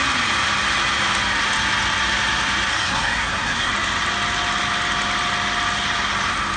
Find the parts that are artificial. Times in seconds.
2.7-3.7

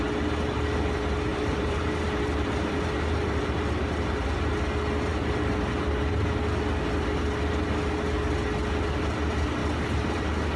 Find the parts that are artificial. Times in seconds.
1.3-3.7

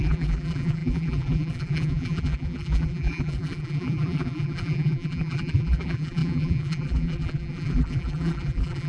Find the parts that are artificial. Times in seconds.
0.0-8.9